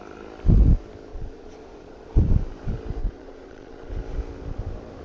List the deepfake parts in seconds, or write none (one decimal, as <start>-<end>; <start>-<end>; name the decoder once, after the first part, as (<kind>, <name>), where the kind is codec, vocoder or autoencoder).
1.1-2.1 (vocoder, Vocos); 3.0-3.9